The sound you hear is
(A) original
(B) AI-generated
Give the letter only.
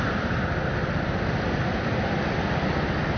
B